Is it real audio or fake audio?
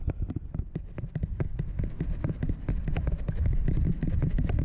real